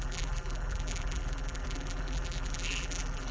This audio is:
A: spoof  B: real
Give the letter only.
A